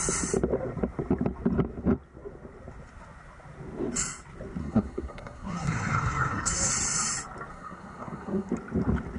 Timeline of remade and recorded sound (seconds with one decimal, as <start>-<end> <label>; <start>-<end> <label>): 0.0-4.6 recorded; 4.6-6.7 remade; 6.7-7.5 recorded; 7.5-8.5 remade; 8.5-9.2 recorded